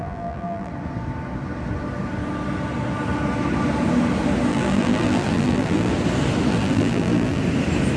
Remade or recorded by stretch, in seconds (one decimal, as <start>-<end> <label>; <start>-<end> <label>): 0.0-0.7 remade; 0.7-4.5 recorded; 4.5-5.9 remade; 5.9-6.5 recorded; 6.5-7.4 remade; 7.4-8.0 recorded